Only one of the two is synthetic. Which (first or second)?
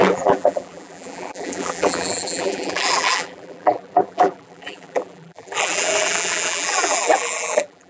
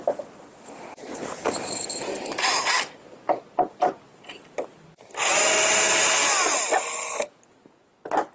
first